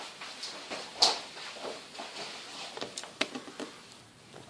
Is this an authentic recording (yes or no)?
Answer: yes